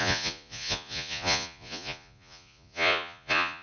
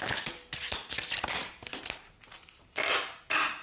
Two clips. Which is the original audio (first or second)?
second